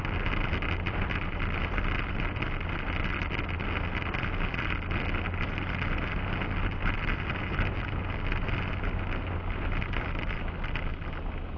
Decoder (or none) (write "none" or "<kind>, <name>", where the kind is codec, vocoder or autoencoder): none